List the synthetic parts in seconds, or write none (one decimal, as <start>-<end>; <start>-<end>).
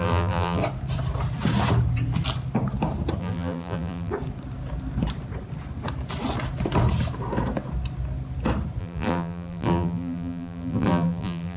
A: 0.0-0.6; 3.2-4.1; 8.8-11.6